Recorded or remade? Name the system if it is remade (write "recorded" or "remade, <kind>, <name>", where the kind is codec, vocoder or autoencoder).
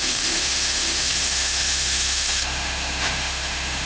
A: remade, autoencoder, DAC-VAE